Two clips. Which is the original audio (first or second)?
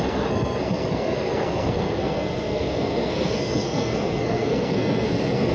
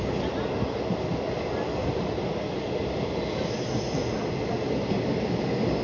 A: second